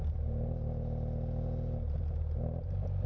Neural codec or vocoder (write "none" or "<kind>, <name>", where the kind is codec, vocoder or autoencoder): none